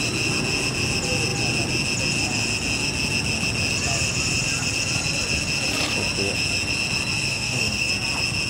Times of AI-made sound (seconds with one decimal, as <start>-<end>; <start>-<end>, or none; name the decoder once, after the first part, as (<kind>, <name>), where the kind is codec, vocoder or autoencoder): 7.3-7.9 (codec, DAC)